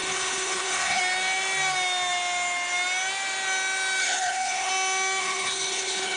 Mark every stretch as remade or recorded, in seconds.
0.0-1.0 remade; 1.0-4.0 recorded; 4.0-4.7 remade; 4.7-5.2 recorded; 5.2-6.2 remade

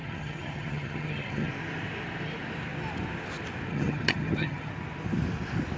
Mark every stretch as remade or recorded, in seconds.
0.0-1.5 remade; 1.5-3.7 recorded; 3.7-4.7 remade; 4.7-5.8 recorded

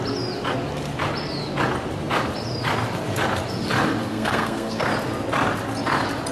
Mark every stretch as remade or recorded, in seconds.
0.0-4.0 recorded; 4.0-4.9 remade; 4.9-6.3 recorded

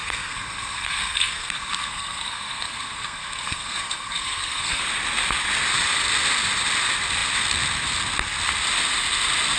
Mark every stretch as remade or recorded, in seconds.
0.0-4.8 remade; 4.8-9.6 recorded

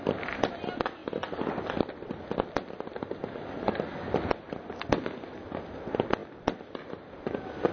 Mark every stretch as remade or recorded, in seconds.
0.0-7.7 recorded

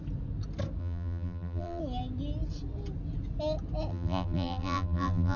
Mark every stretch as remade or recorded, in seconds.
0.0-0.8 recorded; 0.8-1.8 remade; 1.8-3.9 recorded; 3.9-5.4 remade

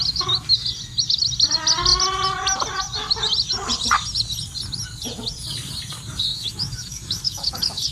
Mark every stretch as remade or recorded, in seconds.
0.0-6.3 recorded; 6.3-7.9 remade

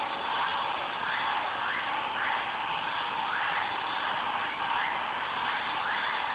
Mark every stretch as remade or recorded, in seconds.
0.0-6.3 recorded